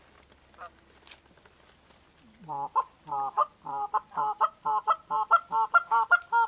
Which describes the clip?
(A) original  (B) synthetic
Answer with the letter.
A